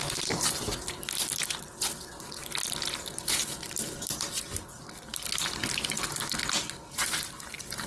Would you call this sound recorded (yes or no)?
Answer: yes